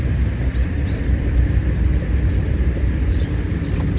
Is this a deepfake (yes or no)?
yes